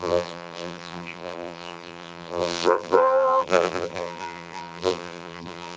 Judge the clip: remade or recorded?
remade